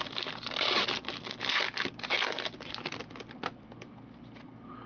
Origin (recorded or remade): recorded